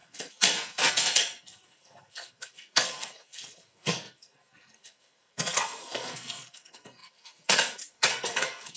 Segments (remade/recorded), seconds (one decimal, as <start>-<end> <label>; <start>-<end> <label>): 0.0-8.8 remade